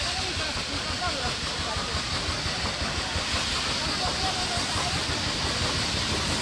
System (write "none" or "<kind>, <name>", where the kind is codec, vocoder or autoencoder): none